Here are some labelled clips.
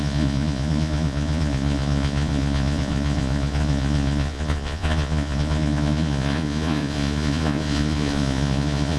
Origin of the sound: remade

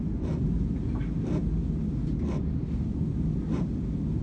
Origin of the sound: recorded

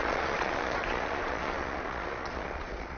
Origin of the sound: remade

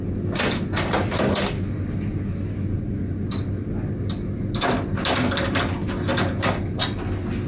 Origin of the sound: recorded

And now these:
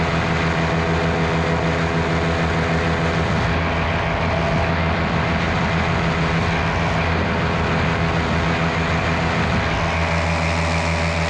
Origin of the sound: recorded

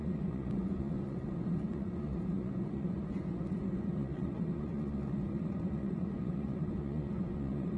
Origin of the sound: remade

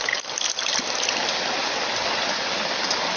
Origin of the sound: recorded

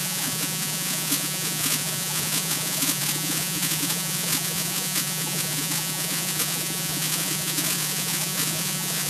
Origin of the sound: remade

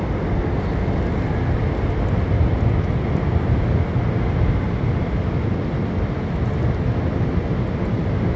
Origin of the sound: recorded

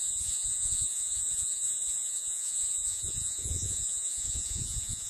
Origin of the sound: remade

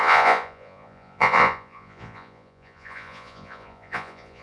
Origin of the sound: remade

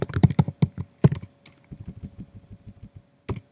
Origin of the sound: recorded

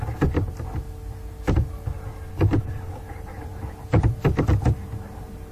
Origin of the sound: recorded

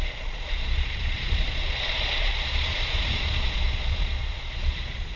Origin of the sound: remade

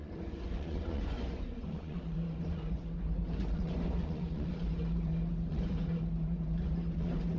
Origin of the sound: remade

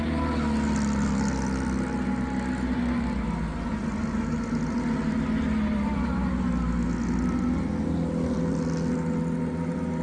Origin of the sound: recorded